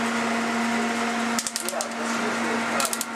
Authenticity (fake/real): real